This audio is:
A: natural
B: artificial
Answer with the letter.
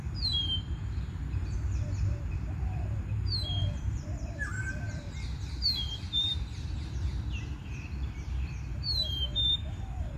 B